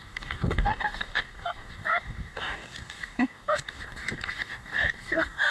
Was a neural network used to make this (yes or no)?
yes